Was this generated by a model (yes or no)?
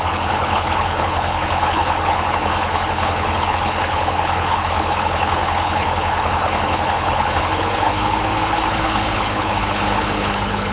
yes